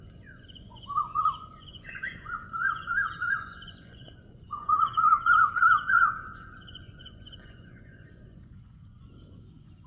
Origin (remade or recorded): remade